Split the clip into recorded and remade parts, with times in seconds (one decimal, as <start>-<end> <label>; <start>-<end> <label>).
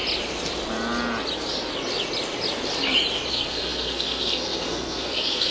0.0-3.3 recorded; 3.3-5.5 remade